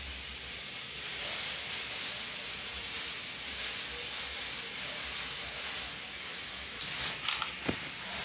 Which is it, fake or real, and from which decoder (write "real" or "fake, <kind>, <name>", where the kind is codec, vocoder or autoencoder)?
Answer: real